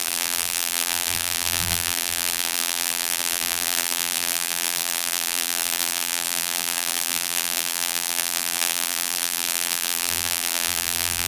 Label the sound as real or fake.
fake